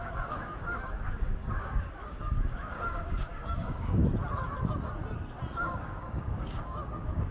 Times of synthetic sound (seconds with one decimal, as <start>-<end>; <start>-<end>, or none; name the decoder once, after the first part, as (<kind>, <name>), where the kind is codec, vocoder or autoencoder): 0.0-4.0 (codec, DAC); 5.6-7.3